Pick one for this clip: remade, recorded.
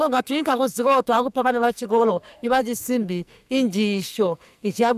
remade